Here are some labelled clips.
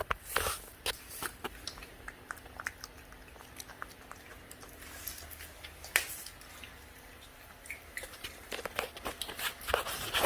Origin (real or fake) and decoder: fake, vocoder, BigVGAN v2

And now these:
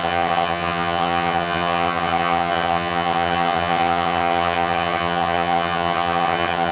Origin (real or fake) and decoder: fake, vocoder, HiFi-GAN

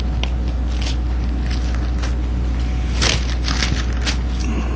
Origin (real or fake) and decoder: real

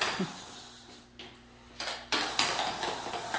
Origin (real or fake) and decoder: real